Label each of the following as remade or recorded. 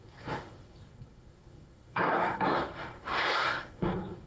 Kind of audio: remade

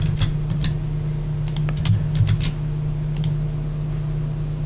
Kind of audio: recorded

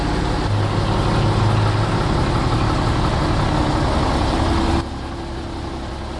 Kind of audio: recorded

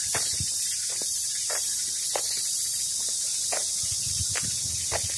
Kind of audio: recorded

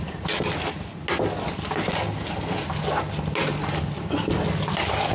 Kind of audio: recorded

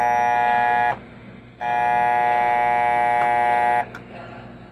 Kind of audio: recorded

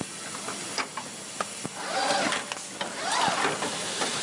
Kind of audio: recorded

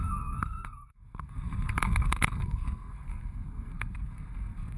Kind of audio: remade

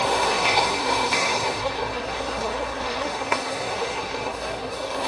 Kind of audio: remade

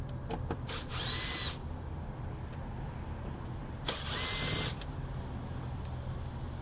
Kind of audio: recorded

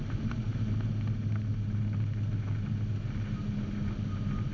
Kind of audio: recorded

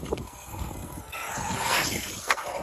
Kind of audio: remade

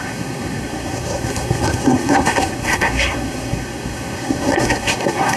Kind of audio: remade